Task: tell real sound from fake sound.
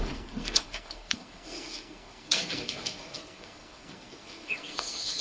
fake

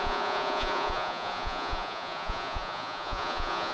fake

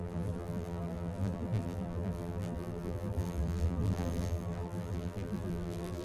fake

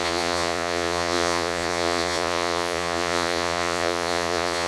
fake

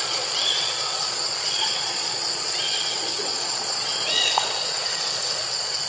fake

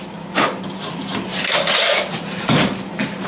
real